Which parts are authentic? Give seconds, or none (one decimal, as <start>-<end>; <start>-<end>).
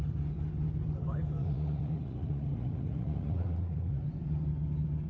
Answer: 0.0-1.4; 4.0-5.1